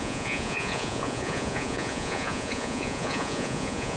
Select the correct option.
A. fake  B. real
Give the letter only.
A